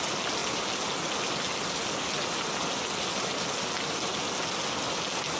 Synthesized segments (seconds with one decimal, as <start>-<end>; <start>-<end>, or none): none